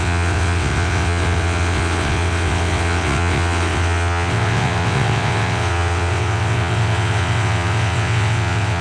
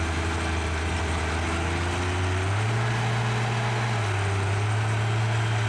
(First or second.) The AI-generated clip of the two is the first